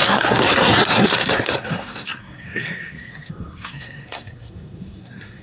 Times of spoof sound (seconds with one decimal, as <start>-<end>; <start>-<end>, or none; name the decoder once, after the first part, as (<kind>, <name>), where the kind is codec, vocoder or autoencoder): 0.0-5.4 (codec, SNAC)